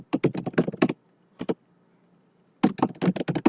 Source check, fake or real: real